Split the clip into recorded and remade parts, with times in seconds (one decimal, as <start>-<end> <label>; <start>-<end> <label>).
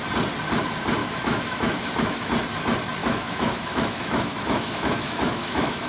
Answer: 0.0-1.0 recorded; 1.0-2.3 remade; 2.3-3.0 recorded; 3.0-5.9 remade